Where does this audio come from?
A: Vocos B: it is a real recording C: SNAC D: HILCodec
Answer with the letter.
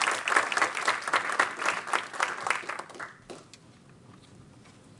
B